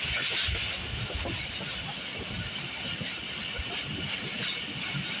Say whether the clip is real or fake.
real